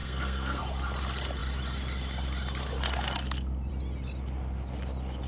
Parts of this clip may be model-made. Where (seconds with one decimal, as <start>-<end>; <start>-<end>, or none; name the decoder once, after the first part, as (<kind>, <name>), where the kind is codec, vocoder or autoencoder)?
0.0-0.6 (codec, SNAC)